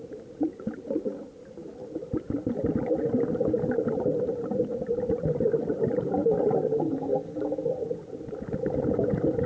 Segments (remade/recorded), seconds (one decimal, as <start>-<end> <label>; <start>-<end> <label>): 0.0-9.5 recorded